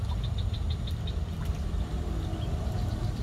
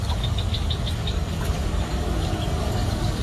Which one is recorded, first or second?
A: first